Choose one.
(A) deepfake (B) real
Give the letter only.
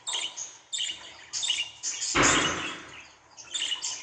B